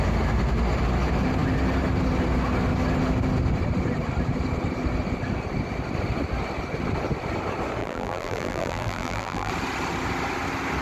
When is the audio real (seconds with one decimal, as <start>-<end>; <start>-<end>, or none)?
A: 0.0-7.8; 9.5-10.8

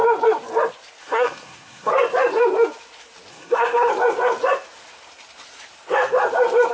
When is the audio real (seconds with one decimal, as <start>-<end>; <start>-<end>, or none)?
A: 0.0-1.0; 1.9-3.3; 3.9-6.7

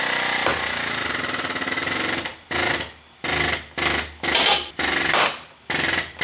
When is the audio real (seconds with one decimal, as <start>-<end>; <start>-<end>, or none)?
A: 0.5-1.7; 2.3-3.2

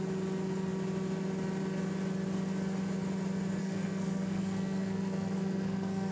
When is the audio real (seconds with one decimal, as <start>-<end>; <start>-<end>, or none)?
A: 0.0-3.6